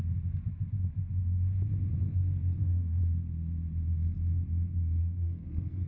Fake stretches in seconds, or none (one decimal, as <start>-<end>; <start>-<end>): 2.0-3.0; 5.0-5.9

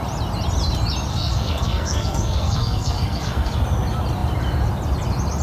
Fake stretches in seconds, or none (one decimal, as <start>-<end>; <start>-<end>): 1.1-3.5

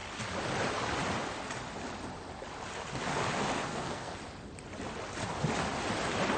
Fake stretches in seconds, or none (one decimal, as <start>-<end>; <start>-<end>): 3.7-4.2

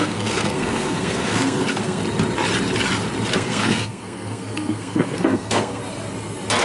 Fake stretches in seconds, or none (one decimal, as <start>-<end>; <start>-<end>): 0.0-2.0; 3.3-5.8